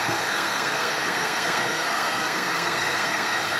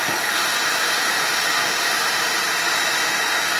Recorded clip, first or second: second